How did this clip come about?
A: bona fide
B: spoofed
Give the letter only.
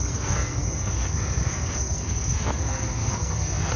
B